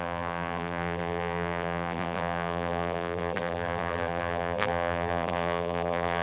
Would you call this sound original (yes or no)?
no